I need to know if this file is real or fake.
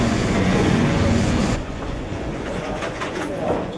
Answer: fake